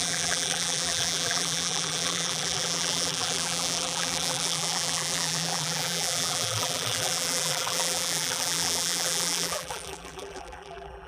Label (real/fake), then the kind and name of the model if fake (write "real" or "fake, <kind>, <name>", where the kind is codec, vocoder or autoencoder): fake, vocoder, BigVGAN v2